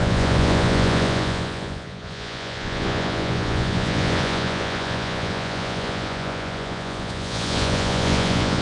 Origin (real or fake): fake